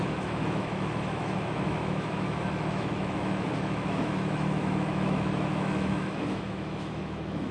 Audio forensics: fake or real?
fake